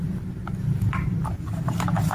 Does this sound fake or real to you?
fake